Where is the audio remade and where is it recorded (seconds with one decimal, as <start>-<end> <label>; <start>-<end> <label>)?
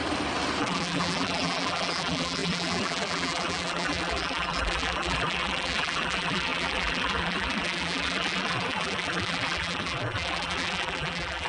0.0-0.6 recorded; 0.6-11.5 remade